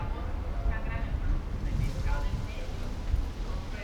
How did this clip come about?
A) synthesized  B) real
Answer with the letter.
B